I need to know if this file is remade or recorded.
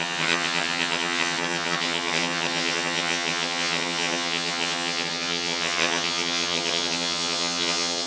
remade